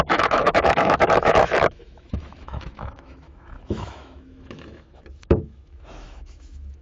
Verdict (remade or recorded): remade